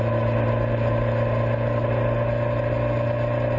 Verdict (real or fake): real